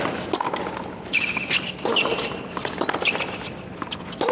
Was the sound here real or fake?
real